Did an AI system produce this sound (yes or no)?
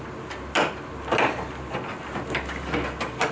no